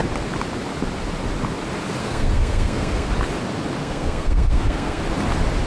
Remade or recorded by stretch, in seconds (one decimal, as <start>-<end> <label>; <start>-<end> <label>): 0.0-2.0 recorded; 2.0-3.1 remade; 3.1-3.8 recorded; 3.8-5.0 remade; 5.0-5.7 recorded